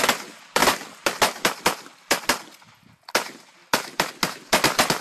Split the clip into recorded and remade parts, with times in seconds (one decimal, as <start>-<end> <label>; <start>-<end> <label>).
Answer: 0.0-0.6 recorded; 0.6-2.4 remade; 2.4-3.6 recorded; 3.6-4.1 remade; 4.1-5.0 recorded